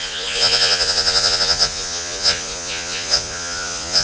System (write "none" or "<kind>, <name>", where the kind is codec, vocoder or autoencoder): vocoder, Vocos